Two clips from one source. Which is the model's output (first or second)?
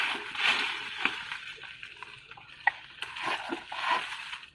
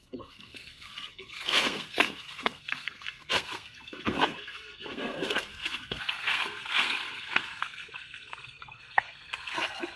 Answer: second